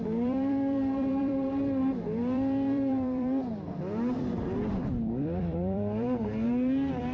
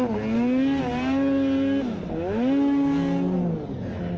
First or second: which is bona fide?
second